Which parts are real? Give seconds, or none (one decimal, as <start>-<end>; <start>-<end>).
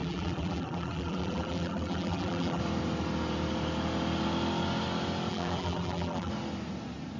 2.6-5.3; 6.3-7.2